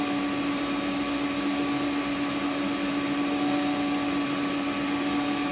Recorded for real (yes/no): yes